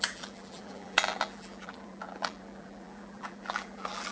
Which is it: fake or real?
fake